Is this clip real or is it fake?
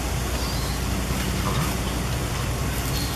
real